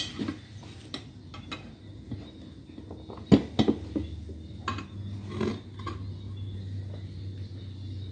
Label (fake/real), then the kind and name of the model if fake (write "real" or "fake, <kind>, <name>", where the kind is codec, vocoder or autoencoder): real